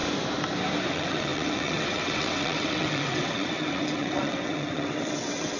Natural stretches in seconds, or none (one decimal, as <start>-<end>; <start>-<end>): 0.0-0.9